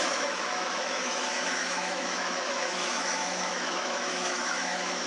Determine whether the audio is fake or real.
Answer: fake